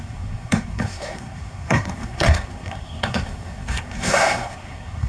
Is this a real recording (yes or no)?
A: no